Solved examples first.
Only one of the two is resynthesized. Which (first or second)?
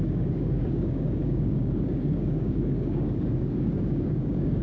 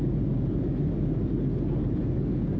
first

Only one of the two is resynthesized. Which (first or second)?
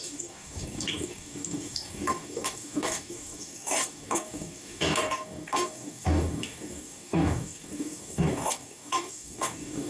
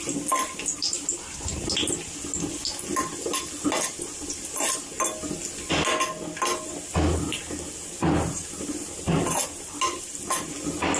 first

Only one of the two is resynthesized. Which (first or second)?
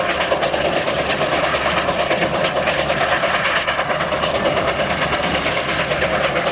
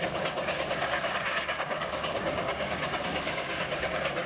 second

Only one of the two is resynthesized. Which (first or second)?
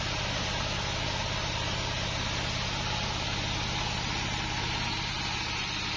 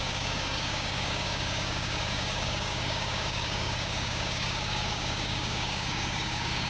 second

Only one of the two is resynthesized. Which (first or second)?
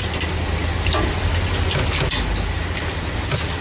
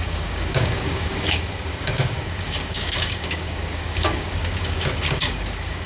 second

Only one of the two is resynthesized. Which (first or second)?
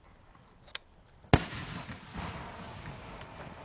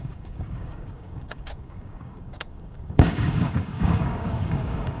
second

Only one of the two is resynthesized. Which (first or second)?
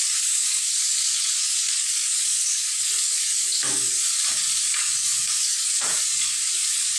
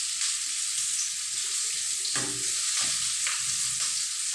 first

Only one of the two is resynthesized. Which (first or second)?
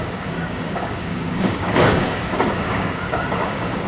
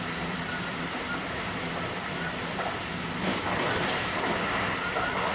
first